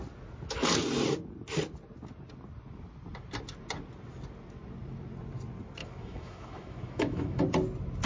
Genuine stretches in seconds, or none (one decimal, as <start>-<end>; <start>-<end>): 0.0-5.8; 7.4-8.1